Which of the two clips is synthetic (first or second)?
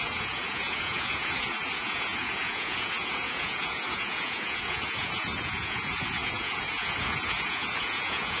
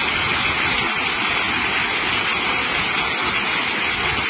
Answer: first